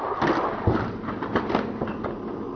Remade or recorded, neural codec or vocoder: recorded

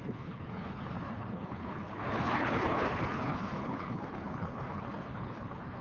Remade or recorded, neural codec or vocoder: remade, codec, HILCodec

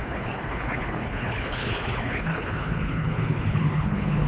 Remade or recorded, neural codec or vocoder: remade, codec, HILCodec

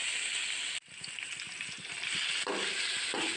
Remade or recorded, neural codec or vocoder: recorded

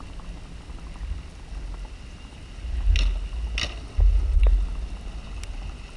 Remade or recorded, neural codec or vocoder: recorded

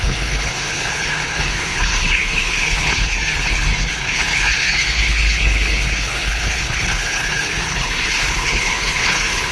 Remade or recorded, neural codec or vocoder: remade, codec, HILCodec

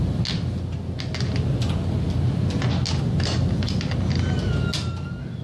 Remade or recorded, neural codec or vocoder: recorded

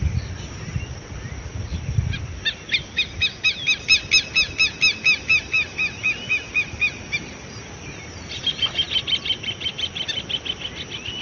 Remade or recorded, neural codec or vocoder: recorded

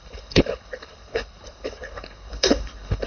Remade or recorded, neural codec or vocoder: remade, codec, HILCodec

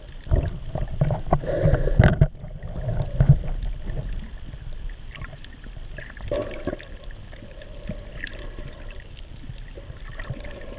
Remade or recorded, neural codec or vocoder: recorded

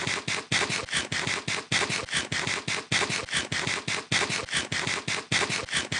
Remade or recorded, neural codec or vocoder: recorded